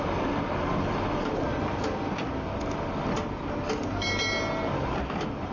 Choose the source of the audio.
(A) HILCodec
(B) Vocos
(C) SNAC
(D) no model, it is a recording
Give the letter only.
D